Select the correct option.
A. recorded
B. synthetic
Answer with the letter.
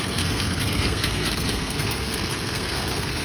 B